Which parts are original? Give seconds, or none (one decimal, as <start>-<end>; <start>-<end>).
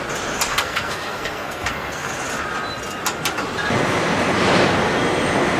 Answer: 0.0-0.5; 2.1-5.6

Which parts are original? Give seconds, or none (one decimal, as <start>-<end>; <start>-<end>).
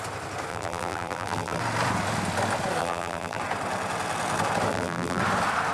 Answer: 0.0-0.5; 1.6-2.8; 3.4-4.7; 5.2-5.7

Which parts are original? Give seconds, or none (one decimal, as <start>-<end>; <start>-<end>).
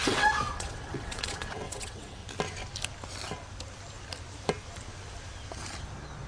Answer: 2.2-6.3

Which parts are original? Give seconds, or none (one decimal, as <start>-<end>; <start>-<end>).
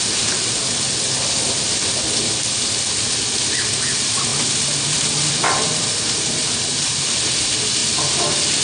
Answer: 0.0-4.3; 7.1-7.8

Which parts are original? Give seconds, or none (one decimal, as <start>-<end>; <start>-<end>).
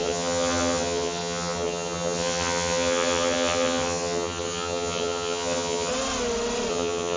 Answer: 5.9-6.7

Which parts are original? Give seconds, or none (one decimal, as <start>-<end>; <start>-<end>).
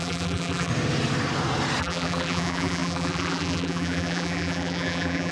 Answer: 0.7-1.8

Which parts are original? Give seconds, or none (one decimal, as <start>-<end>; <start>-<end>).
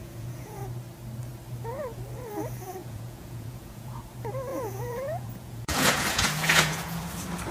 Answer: 0.6-2.8; 4.0-4.5; 7.0-7.5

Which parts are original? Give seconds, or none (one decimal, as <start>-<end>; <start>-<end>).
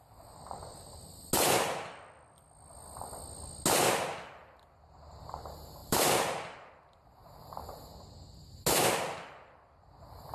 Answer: 0.0-5.8; 6.7-10.3